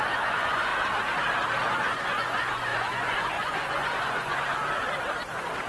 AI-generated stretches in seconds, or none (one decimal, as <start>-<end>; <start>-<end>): 0.0-0.7; 1.8-4.6